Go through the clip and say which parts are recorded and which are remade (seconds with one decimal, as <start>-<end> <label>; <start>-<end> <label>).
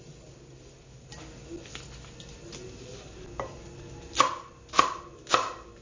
0.0-5.8 recorded